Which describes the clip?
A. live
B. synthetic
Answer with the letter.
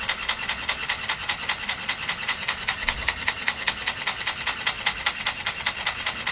A